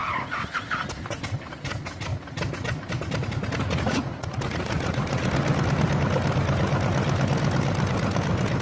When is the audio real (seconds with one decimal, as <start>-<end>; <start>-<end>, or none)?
0.7-3.6; 5.3-8.6